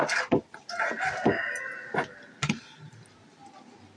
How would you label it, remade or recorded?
recorded